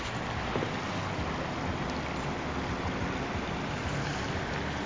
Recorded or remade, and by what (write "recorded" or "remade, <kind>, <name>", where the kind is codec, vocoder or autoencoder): recorded